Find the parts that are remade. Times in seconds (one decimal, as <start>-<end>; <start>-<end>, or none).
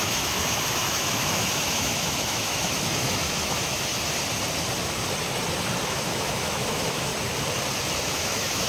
0.0-3.9; 5.8-7.1; 8.0-8.7